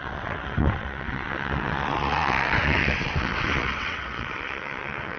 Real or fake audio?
fake